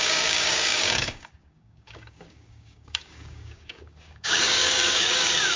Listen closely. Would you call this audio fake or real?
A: fake